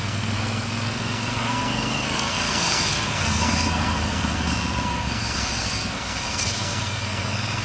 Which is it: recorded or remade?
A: remade